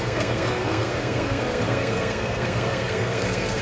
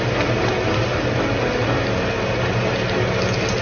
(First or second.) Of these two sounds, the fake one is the first